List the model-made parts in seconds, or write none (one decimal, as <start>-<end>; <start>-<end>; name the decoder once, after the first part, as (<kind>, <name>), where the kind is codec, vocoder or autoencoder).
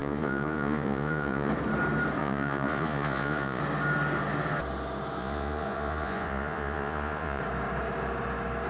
0.0-1.5 (vocoder, Vocos); 2.2-3.6; 5.2-7.4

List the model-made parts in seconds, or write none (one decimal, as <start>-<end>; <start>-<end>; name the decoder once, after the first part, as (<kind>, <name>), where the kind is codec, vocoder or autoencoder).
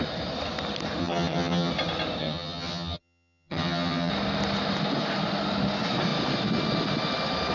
1.0-1.7 (vocoder, HiFi-GAN); 2.2-4.1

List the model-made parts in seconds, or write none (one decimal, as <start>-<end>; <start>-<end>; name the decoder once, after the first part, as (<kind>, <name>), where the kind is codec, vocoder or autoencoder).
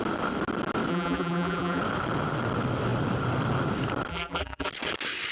0.9-1.8 (vocoder, BigVGAN v2); 4.1-4.7